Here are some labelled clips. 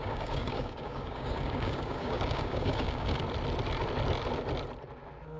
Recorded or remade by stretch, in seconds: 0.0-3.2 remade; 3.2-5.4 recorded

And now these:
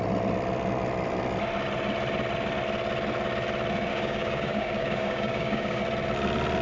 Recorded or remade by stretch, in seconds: 0.0-3.9 recorded; 3.9-5.8 remade; 5.8-6.6 recorded

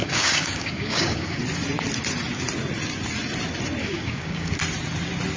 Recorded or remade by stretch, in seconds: 0.0-1.4 remade; 1.4-3.8 recorded; 3.8-4.5 remade; 4.5-5.4 recorded

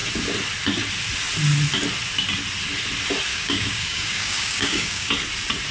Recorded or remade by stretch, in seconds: 0.0-3.3 recorded; 3.3-5.1 remade; 5.1-5.7 recorded

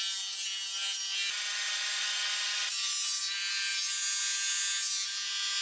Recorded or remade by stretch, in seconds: 0.0-5.6 recorded

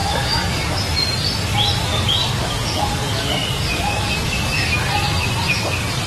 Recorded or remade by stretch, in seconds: 0.0-0.8 remade; 0.8-1.9 recorded; 1.9-4.7 remade; 4.7-6.1 recorded